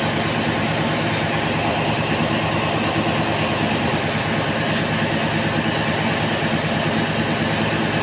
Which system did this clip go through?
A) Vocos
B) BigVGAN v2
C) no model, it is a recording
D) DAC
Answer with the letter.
C